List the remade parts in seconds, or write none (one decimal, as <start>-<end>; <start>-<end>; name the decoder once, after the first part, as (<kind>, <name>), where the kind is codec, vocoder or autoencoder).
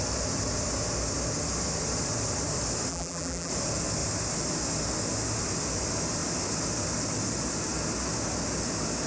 2.9-3.5 (vocoder, BigVGAN v2)